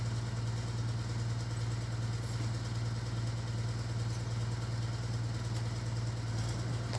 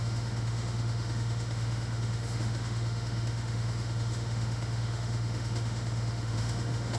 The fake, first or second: second